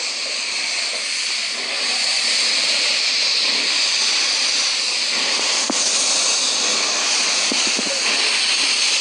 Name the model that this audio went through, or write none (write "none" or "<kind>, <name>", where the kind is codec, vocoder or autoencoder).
none